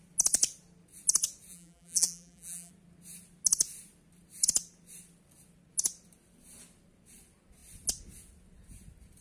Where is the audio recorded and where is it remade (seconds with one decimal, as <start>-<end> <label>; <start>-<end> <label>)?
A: 0.0-1.5 recorded; 1.5-2.7 remade; 2.7-9.2 recorded